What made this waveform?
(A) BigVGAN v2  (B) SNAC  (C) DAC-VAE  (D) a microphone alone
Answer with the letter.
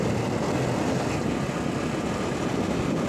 D